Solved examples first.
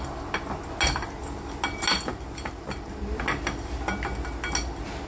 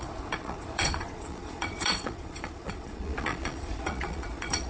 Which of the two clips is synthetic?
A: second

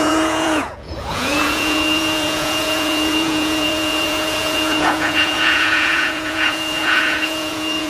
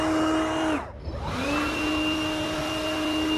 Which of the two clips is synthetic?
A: first